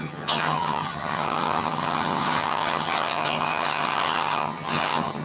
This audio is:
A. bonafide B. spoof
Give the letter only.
B